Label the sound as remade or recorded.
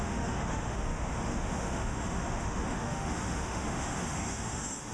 remade